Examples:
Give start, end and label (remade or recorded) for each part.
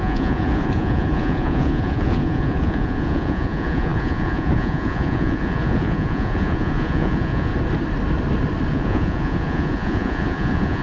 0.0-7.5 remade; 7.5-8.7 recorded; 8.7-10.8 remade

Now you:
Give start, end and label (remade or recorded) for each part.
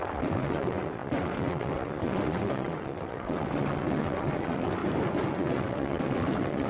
0.0-4.8 remade; 4.8-5.3 recorded; 5.3-6.7 remade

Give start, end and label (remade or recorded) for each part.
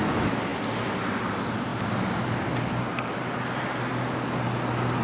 0.0-5.0 recorded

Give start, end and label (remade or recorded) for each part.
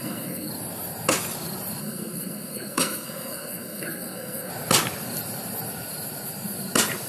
0.0-0.5 remade; 0.5-1.8 recorded; 1.8-4.5 remade; 4.5-7.1 recorded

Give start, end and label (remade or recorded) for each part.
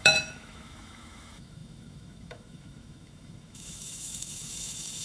0.0-5.0 remade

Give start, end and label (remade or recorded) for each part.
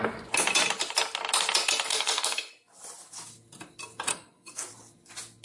0.0-1.9 recorded; 1.9-2.5 remade; 2.5-4.1 recorded; 4.1-4.7 remade; 4.7-5.4 recorded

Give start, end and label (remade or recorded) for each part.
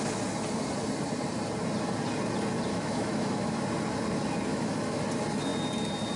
0.0-2.7 recorded; 2.7-3.5 remade; 3.5-4.5 recorded; 4.5-5.0 remade; 5.0-6.2 recorded